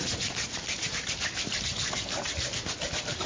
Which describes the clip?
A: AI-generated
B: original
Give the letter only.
A